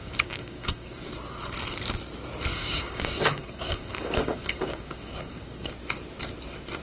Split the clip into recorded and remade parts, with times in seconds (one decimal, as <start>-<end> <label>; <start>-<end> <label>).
0.0-1.0 remade; 1.0-2.5 recorded; 2.5-5.7 remade; 5.7-6.8 recorded